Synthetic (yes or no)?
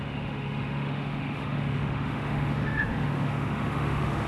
yes